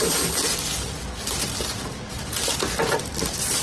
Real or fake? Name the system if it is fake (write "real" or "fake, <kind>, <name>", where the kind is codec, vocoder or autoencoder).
real